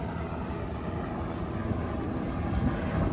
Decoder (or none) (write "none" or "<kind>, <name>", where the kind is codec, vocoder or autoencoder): none